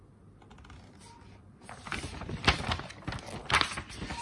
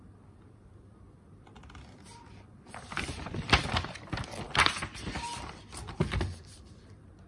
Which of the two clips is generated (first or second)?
second